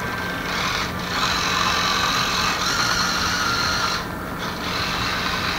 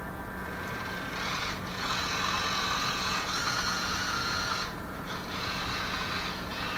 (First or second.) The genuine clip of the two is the first